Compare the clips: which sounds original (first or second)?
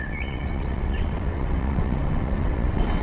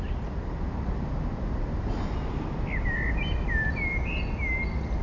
second